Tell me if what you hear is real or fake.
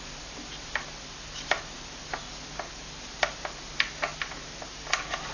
real